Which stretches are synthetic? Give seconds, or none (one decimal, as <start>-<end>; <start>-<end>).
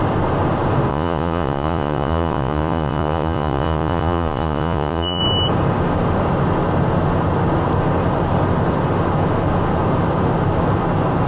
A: 0.9-5.2